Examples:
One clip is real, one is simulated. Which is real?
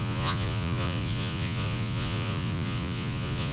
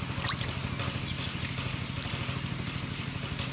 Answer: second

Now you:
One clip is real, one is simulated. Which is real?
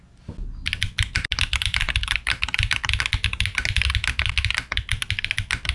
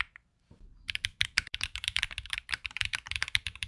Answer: first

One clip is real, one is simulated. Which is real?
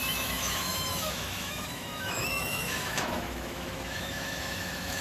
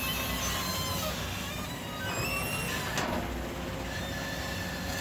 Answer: second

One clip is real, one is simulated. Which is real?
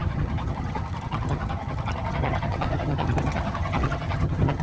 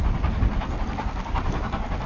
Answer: second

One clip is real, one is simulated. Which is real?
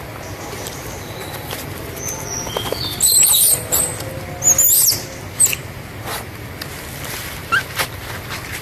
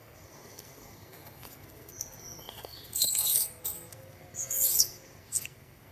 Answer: first